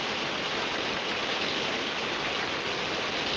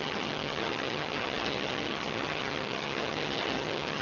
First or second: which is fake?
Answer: second